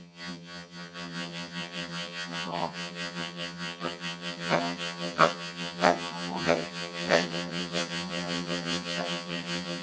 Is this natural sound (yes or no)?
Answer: no